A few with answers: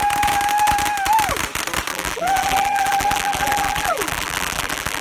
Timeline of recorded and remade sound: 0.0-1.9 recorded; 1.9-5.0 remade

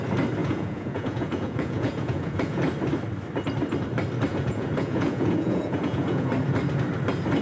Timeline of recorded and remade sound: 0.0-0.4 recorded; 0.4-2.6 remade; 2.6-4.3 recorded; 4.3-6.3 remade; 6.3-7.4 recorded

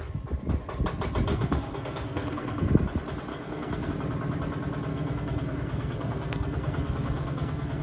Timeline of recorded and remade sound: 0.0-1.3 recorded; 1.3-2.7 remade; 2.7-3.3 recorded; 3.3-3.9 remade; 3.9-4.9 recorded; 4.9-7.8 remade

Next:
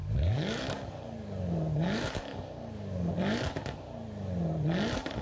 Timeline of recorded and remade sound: 0.0-3.1 remade; 3.1-5.2 recorded